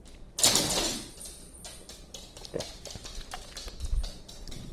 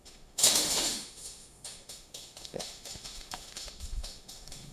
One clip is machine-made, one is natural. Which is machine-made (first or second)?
second